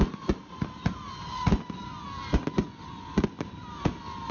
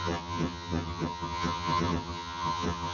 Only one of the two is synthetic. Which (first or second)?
second